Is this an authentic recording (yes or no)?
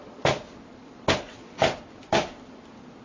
yes